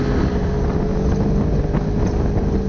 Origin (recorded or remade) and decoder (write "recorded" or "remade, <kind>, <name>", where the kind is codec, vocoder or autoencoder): recorded